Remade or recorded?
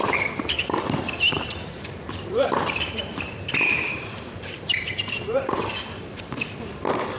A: remade